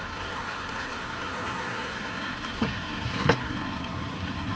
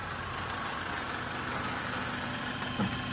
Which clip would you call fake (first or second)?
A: first